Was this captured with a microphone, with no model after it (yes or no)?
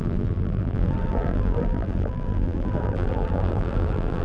no